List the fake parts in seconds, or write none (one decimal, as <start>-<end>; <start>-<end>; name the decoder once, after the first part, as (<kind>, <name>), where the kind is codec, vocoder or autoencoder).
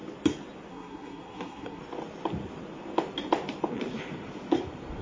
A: 0.7-1.8 (codec, SNAC)